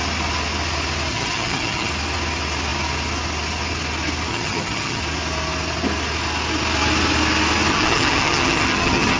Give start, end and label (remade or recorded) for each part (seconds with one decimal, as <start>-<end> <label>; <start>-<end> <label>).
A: 0.0-1.1 recorded; 1.1-1.9 remade; 1.9-4.3 recorded; 4.3-5.0 remade; 5.0-7.7 recorded; 7.7-9.2 remade

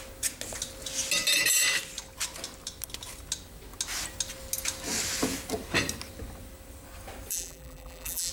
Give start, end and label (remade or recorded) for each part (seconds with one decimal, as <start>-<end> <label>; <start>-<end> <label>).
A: 0.0-7.3 recorded; 7.3-8.3 remade

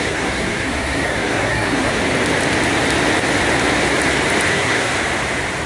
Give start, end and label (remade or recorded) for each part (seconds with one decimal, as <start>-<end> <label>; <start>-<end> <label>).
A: 0.0-1.9 remade; 1.9-4.5 recorded; 4.5-4.9 remade; 4.9-5.7 recorded

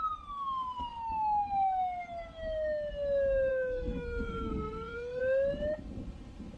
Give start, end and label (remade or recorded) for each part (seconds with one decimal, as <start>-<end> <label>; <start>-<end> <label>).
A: 0.0-3.5 recorded; 3.5-5.2 remade; 5.2-6.6 recorded

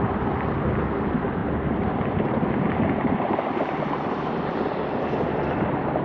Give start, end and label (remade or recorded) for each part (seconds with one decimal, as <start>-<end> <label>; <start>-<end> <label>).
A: 0.0-6.0 recorded

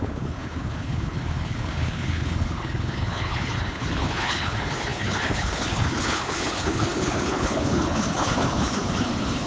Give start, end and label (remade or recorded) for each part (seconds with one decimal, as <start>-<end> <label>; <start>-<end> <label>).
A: 0.0-9.5 remade

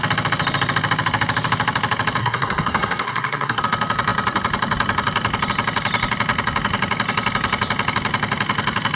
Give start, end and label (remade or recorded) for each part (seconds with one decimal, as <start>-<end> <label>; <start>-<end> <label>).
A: 0.0-2.2 recorded; 2.2-3.6 remade; 3.6-9.0 recorded